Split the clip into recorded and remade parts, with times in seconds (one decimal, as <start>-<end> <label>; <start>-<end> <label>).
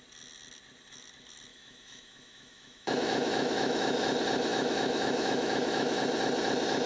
0.0-1.5 recorded; 1.5-4.0 remade; 4.0-4.5 recorded; 4.5-6.0 remade; 6.0-6.9 recorded